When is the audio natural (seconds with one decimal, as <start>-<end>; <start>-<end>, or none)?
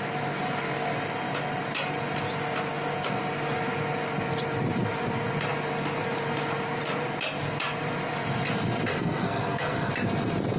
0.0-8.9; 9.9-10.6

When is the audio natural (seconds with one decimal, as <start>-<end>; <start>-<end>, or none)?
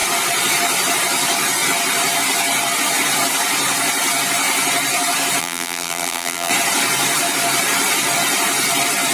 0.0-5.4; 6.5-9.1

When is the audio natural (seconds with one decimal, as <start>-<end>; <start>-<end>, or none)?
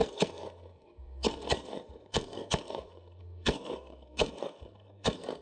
none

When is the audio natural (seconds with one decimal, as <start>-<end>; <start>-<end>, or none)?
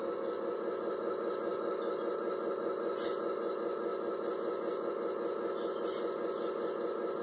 0.0-7.2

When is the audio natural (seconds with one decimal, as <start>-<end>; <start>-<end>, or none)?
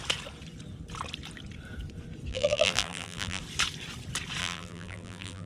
0.0-2.3; 3.4-4.4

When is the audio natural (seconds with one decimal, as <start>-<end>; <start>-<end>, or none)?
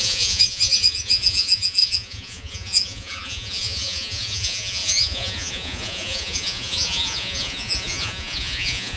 none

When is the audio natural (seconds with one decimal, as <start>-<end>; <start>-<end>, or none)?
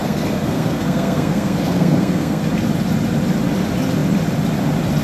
2.4-5.0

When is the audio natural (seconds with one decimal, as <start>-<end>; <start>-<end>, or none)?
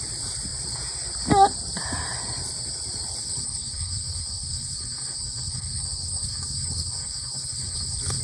0.0-3.2